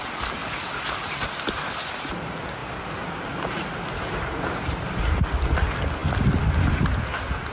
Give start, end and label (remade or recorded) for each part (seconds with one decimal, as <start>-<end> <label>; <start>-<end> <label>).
0.0-7.5 recorded

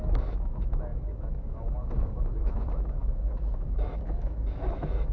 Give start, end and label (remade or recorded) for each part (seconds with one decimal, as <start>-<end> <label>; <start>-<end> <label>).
0.0-5.1 remade

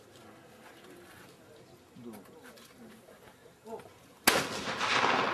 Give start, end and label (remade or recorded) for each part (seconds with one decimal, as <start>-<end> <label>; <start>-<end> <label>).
0.0-5.3 recorded

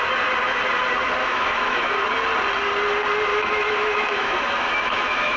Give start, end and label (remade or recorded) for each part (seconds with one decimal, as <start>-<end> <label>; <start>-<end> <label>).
0.0-1.2 recorded; 1.2-1.9 remade; 1.9-3.3 recorded; 3.3-5.4 remade